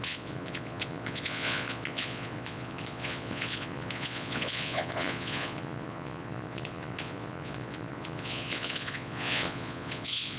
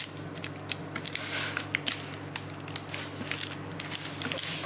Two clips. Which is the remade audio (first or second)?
first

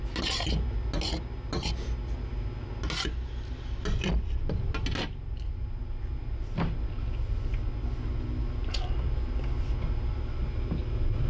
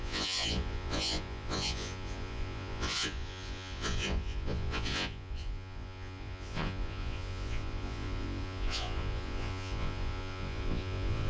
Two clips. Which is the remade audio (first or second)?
second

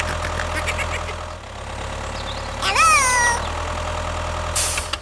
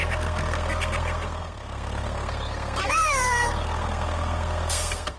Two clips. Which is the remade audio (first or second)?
second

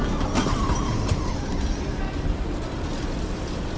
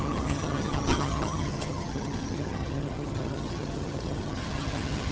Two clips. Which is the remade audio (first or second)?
second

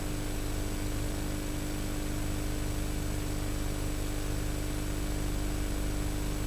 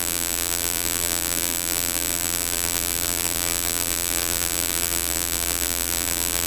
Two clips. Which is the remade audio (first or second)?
second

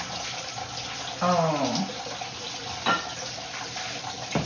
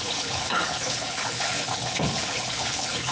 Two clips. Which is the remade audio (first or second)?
second